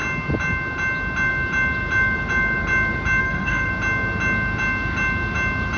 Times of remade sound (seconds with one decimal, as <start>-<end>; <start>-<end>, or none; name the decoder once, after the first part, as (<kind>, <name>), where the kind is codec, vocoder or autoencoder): 3.2-3.7 (codec, SNAC)